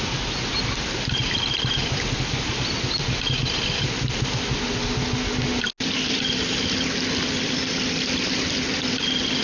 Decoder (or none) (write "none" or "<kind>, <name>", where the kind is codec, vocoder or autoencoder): none